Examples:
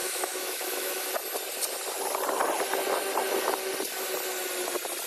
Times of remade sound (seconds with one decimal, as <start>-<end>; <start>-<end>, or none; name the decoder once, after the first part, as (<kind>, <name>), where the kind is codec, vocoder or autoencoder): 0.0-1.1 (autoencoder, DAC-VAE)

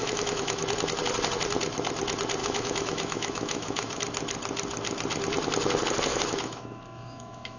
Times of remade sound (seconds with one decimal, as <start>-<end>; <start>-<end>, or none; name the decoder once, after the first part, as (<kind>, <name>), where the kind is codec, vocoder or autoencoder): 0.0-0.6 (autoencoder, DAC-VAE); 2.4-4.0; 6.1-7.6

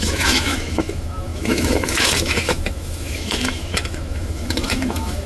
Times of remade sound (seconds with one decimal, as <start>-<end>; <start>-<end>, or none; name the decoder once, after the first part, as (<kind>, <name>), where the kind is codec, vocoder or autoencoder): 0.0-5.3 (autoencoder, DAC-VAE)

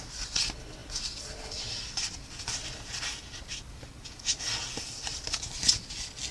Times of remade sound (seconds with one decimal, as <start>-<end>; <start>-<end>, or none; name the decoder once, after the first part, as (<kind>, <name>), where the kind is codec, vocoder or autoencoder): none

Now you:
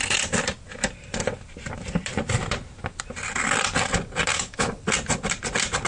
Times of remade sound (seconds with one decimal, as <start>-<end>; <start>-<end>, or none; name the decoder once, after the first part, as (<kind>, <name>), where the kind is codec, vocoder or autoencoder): 4.3-4.8 (autoencoder, DAC-VAE)